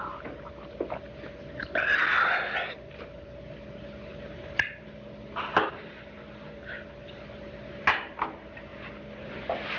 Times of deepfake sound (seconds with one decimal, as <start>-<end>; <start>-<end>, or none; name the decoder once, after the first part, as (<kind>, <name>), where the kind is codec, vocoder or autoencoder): none